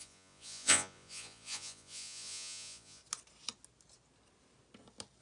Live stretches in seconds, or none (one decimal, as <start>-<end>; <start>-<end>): 3.0-5.2